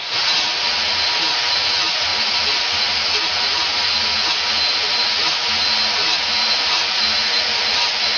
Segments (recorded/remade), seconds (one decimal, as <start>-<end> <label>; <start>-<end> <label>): 0.0-8.2 recorded